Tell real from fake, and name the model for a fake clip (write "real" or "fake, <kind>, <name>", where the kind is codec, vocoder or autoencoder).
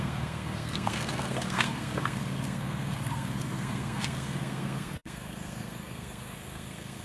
fake, codec, SNAC